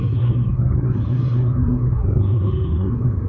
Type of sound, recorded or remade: remade